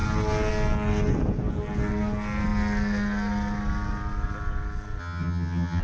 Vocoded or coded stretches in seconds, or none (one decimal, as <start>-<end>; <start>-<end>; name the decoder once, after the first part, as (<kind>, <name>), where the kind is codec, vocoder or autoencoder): 5.0-5.8 (vocoder, HiFi-GAN)

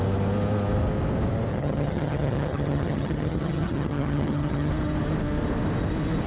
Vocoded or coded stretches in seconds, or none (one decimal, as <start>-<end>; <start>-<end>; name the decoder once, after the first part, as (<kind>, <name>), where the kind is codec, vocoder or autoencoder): 1.5-4.7 (vocoder, HiFi-GAN)

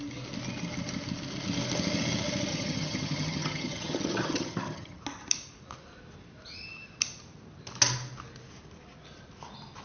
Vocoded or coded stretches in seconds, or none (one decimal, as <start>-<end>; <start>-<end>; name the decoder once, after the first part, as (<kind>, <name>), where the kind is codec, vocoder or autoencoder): 2.5-5.0 (vocoder, HiFi-GAN)